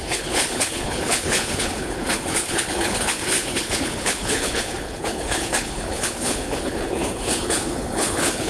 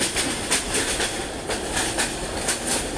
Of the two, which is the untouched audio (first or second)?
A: second